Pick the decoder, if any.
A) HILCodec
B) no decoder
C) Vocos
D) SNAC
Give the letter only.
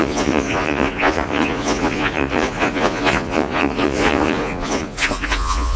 C